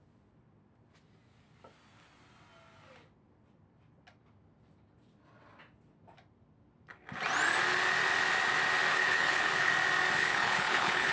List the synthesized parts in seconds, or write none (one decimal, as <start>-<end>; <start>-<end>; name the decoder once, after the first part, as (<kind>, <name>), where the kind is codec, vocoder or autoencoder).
8.9-9.7 (codec, HILCodec); 10.2-11.1